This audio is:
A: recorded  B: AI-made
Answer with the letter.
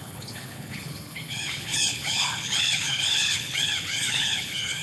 B